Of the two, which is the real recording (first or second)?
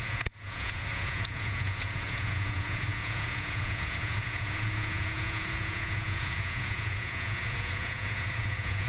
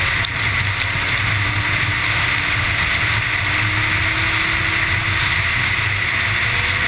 second